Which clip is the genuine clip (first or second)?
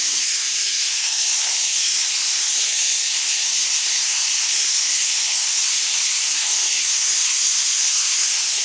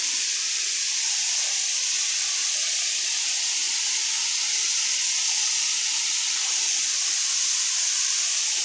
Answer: second